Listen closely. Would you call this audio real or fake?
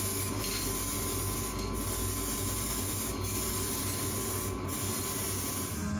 real